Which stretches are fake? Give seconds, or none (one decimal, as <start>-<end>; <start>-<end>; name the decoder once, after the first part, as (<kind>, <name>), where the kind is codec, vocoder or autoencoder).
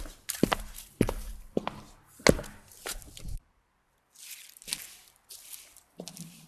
2.9-3.5 (vocoder, BigVGAN v2)